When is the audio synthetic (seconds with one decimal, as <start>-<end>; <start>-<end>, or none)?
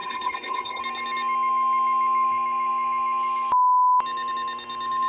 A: 0.0-0.8